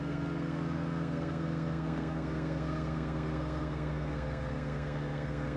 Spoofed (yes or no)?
yes